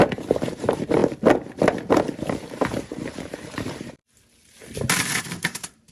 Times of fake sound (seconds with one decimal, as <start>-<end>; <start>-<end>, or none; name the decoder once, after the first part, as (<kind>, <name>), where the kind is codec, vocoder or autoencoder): 0.0-1.0 (vocoder, BigVGAN v2); 2.0-4.0; 5.2-5.9